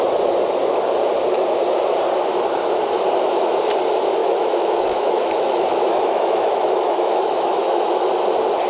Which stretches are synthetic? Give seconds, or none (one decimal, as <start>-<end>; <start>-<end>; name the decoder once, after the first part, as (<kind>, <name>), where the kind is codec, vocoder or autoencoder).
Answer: 4.2-8.1 (autoencoder, DAC-VAE)